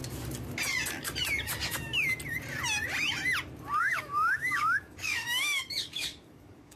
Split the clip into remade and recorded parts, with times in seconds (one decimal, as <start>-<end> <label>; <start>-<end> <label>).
0.0-3.8 recorded; 3.8-6.8 remade